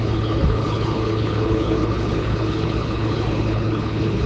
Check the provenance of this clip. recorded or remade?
remade